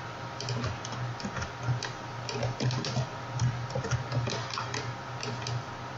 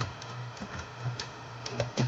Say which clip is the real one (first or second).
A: first